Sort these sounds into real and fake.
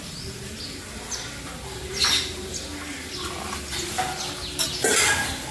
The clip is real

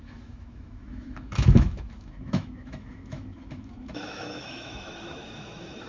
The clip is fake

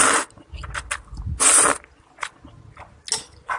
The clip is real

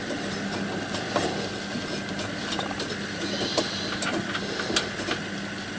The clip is real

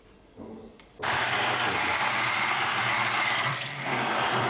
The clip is fake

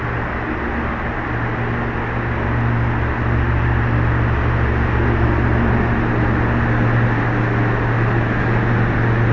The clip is real